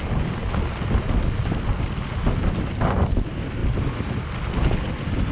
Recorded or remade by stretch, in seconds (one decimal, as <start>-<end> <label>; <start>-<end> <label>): 0.0-5.3 recorded